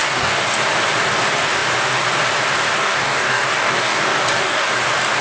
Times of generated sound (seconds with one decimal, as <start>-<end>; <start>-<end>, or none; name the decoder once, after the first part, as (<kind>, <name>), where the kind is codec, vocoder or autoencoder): 0.0-0.6 (codec, DAC); 2.8-4.7